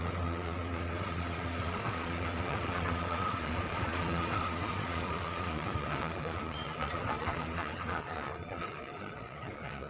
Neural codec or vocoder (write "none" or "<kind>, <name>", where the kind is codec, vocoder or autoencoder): vocoder, Vocos